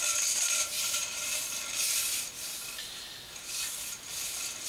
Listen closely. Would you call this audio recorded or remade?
recorded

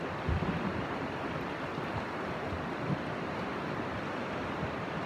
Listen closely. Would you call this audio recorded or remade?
remade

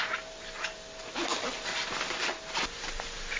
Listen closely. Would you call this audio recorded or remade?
recorded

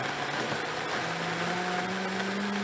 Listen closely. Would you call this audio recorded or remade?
recorded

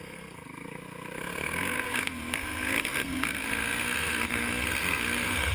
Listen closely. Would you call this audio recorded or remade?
remade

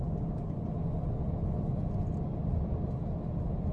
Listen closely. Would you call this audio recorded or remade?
recorded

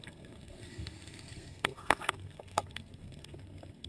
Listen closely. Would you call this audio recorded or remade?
remade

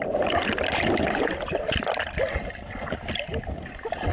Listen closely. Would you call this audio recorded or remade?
recorded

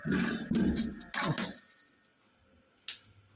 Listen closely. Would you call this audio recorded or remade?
recorded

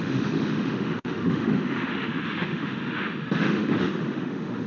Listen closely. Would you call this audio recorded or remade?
remade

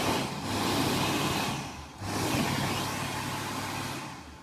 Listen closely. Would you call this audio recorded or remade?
recorded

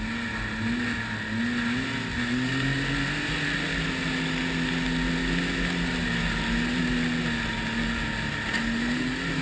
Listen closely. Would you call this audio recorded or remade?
recorded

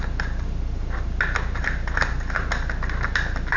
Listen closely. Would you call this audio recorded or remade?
recorded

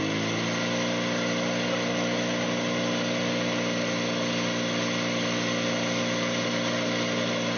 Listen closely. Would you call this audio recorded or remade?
recorded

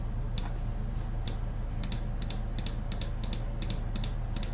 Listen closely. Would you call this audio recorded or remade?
recorded